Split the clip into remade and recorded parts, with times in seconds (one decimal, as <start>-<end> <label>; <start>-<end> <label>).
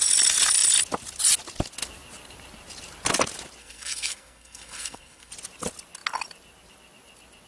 0.0-3.6 recorded; 3.6-5.3 remade; 5.3-7.5 recorded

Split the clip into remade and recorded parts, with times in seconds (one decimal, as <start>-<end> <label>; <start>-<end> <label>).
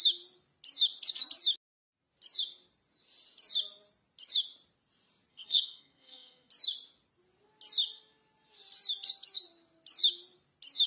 0.0-5.3 recorded; 5.3-6.5 remade; 6.5-10.9 recorded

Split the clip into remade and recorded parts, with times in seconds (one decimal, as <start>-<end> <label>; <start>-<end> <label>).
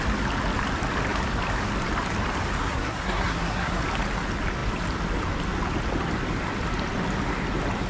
0.0-2.6 recorded; 2.6-3.8 remade; 3.8-7.9 recorded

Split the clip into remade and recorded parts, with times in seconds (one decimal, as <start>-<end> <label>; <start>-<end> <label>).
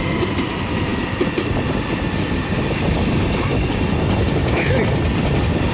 0.0-5.7 recorded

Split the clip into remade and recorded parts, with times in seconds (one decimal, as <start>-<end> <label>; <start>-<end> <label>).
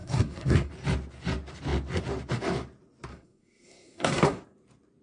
0.0-0.7 remade; 0.7-3.1 recorded; 3.1-4.4 remade; 4.4-5.0 recorded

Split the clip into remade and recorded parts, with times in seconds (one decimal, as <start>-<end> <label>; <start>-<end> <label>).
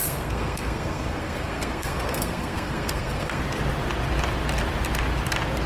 0.0-3.4 remade; 3.4-5.7 recorded